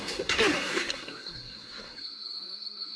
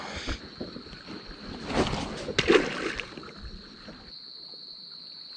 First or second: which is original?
second